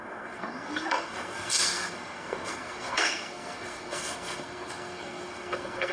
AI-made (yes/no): yes